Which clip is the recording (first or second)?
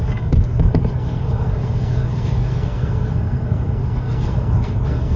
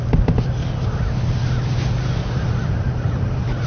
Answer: second